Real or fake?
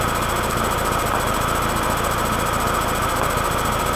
real